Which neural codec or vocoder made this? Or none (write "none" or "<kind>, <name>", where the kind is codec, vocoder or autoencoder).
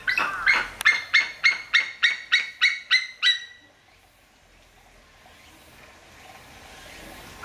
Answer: none